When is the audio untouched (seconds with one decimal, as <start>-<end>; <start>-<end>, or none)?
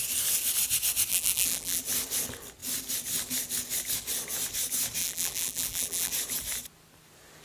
0.0-1.1; 1.8-5.0; 6.1-7.4